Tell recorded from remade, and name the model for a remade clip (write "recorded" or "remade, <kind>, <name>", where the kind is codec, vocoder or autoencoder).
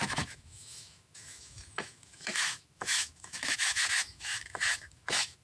remade, autoencoder, DAC-VAE